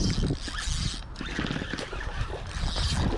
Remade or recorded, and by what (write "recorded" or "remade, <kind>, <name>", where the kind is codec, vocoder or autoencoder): recorded